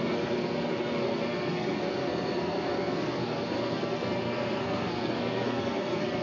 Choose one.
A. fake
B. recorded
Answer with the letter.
A